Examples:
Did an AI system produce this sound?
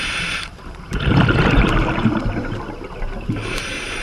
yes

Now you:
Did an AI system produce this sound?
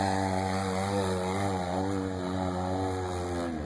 no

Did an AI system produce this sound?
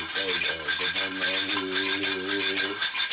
no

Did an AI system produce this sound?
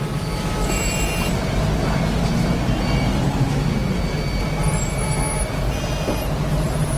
no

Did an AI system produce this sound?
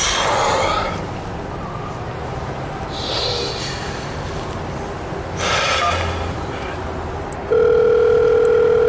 no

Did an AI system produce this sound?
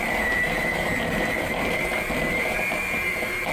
yes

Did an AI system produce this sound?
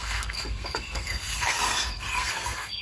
yes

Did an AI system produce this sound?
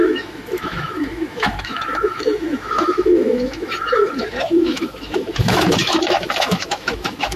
yes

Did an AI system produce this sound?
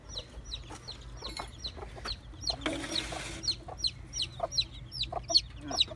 no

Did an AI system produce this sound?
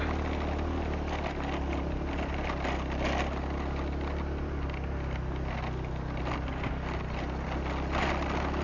no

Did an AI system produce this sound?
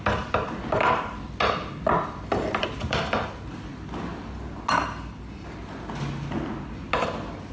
no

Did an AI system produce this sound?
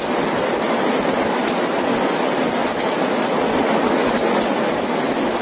no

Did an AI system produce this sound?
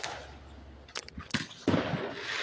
no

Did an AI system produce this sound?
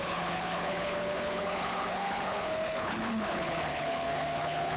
yes